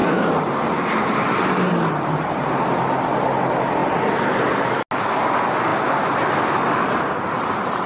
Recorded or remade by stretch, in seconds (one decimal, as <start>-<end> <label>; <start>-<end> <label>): 0.0-7.9 recorded